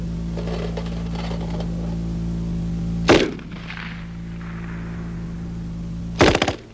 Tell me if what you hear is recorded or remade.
recorded